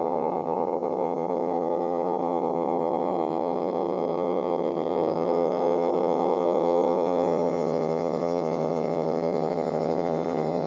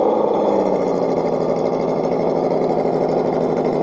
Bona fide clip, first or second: second